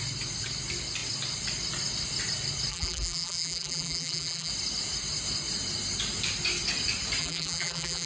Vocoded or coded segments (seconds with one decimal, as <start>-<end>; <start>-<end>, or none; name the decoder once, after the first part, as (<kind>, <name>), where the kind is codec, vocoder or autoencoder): 2.7-4.5 (vocoder, BigVGAN v2); 7.2-8.1